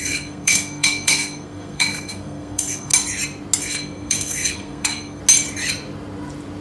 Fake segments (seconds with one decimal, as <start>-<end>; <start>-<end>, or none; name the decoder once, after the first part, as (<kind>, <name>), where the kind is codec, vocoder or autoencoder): 0.0-2.9 (codec, SNAC); 3.6-5.2